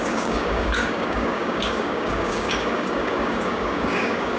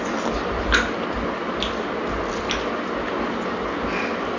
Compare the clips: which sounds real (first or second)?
second